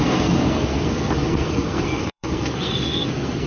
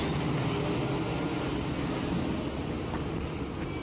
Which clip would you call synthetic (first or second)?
first